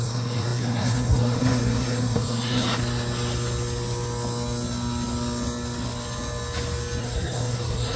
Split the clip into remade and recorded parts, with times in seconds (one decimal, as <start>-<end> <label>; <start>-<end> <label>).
0.0-2.8 remade; 2.8-7.0 recorded; 7.0-8.0 remade